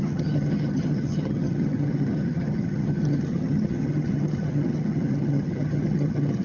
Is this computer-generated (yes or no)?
yes